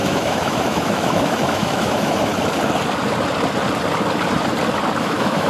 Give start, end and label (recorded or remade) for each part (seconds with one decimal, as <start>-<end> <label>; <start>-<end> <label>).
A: 0.0-2.3 remade; 2.3-5.0 recorded; 5.0-5.5 remade

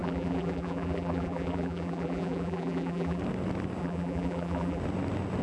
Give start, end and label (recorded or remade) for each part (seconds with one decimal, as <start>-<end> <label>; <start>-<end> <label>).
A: 0.0-3.2 remade; 3.2-3.8 recorded; 3.8-4.8 remade; 4.8-5.4 recorded

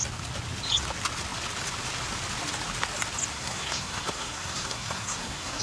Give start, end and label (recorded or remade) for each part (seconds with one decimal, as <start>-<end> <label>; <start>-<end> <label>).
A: 0.0-3.3 recorded; 3.3-5.6 remade

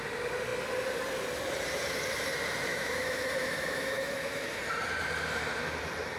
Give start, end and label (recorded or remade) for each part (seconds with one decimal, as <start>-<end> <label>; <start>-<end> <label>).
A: 0.0-2.7 recorded; 2.7-4.6 remade; 4.6-6.2 recorded

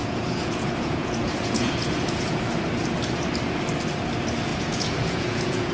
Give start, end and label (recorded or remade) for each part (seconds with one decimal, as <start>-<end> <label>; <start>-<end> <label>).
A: 0.0-2.4 remade; 2.4-4.5 recorded; 4.5-5.7 remade

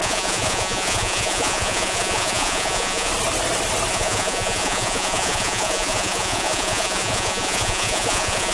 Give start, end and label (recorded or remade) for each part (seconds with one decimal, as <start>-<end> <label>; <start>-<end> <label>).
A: 0.0-3.1 remade; 3.1-3.9 recorded; 3.9-8.5 remade